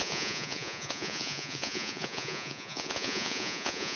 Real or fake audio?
fake